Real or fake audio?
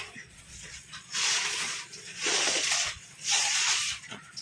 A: fake